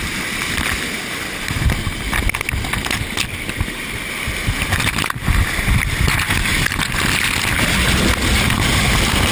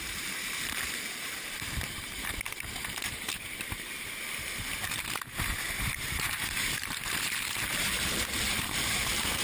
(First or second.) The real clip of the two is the first